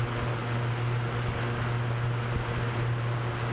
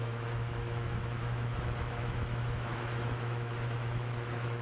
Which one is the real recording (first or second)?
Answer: first